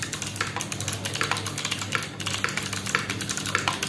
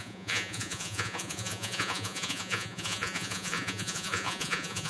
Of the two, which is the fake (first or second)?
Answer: second